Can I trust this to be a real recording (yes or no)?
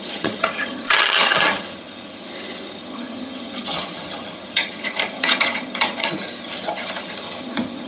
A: no